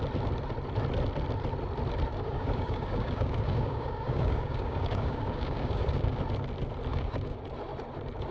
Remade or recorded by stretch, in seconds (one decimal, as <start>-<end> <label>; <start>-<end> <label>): 0.0-2.1 recorded; 2.1-6.2 remade; 6.2-6.9 recorded; 6.9-7.4 remade; 7.4-8.3 recorded

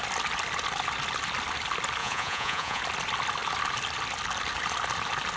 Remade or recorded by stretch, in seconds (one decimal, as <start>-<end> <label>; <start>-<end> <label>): 0.0-2.0 recorded; 2.0-2.8 remade; 2.8-5.4 recorded

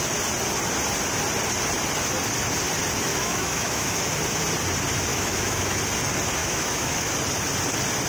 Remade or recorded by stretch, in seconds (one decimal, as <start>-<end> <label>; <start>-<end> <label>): 0.0-3.1 recorded; 3.1-4.0 remade; 4.0-5.1 recorded; 5.1-5.8 remade; 5.8-6.4 recorded; 6.4-7.1 remade; 7.1-8.1 recorded

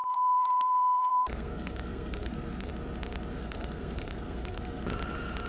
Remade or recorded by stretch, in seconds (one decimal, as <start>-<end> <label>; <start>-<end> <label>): 0.0-2.7 remade; 2.7-3.3 recorded; 3.3-4.8 remade; 4.8-5.5 recorded

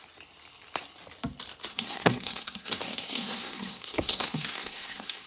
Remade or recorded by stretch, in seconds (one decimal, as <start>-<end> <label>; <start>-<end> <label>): 0.0-1.7 recorded; 1.7-5.3 remade

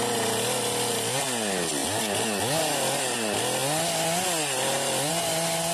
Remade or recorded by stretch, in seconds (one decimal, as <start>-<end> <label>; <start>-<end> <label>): 0.0-5.7 recorded

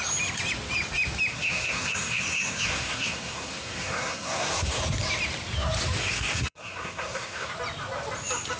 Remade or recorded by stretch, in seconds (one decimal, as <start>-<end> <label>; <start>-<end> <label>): 0.0-1.3 recorded; 1.3-4.8 remade; 4.8-6.0 recorded; 6.0-7.5 remade; 7.5-8.6 recorded